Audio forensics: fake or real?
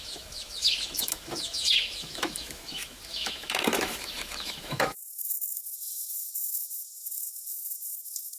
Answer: fake